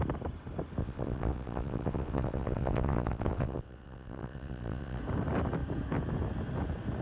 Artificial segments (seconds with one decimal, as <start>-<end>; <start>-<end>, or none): 0.8-5.0